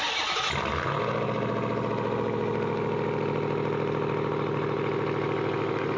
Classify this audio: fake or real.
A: real